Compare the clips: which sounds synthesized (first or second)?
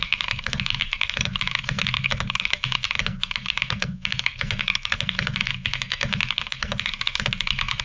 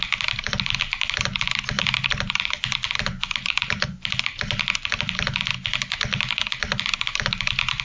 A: first